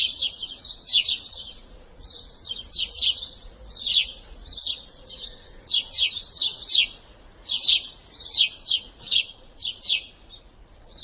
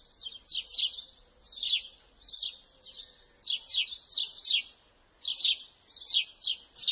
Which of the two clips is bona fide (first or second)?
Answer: second